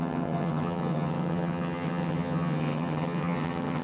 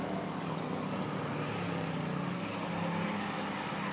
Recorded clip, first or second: second